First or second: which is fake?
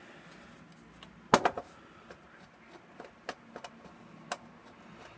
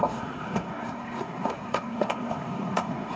second